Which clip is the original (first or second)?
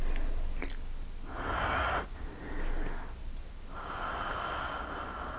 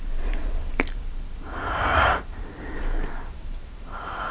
first